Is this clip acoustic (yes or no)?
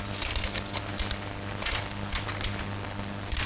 yes